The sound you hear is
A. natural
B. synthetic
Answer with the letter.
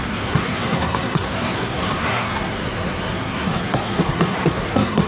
B